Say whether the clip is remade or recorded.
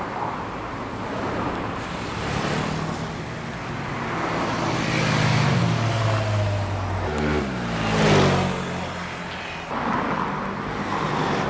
recorded